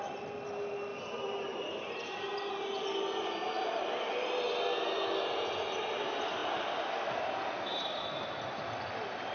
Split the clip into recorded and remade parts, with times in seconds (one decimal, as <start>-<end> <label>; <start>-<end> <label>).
0.0-0.9 recorded; 0.9-2.5 remade; 2.5-7.7 recorded; 7.7-8.3 remade; 8.3-9.3 recorded